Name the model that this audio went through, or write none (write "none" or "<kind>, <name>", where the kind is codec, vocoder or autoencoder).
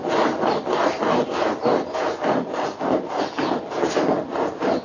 none